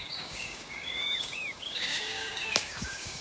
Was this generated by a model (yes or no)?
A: yes